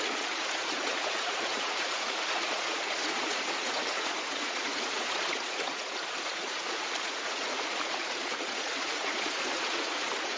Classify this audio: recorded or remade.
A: remade